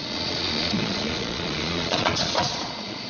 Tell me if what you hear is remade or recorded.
remade